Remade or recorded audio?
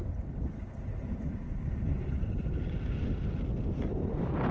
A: recorded